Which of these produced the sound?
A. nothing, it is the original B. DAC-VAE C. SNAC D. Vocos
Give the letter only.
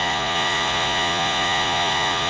D